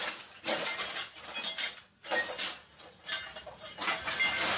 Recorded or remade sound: recorded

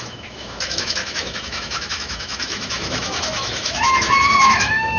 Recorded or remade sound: remade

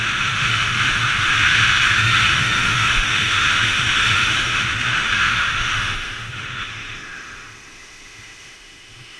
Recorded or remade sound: remade